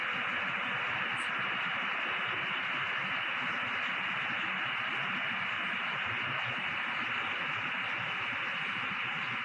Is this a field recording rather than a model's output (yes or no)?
yes